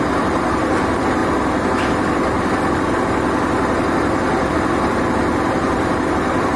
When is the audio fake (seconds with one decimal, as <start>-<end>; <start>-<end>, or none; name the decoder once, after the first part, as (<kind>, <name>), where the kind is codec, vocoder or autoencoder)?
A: 0.0-1.2 (vocoder, BigVGAN v2); 4.5-6.6